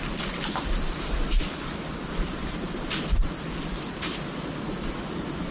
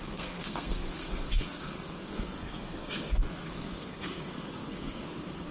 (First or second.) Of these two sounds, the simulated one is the second